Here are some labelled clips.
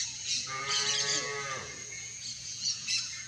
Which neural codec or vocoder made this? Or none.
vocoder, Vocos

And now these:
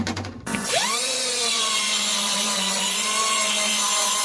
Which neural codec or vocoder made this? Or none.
vocoder, Vocos